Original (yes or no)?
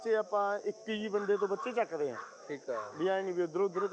no